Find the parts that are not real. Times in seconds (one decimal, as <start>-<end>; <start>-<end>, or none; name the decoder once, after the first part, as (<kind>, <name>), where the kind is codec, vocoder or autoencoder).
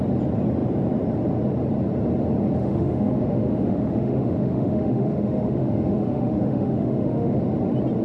2.6-7.4 (autoencoder, DAC-VAE)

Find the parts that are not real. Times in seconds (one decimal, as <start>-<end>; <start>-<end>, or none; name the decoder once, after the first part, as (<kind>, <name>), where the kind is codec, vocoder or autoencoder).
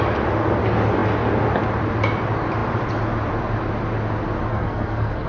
4.5-5.3 (codec, SNAC)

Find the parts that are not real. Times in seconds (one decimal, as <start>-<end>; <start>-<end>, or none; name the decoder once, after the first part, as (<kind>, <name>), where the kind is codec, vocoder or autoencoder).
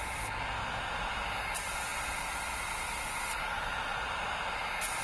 none